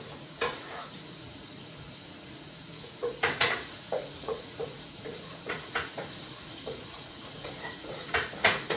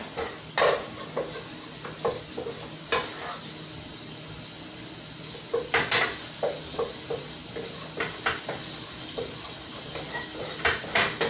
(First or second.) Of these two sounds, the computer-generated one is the first